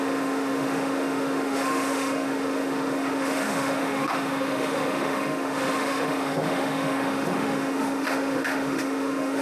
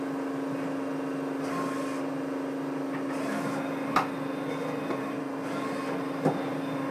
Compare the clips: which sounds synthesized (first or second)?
first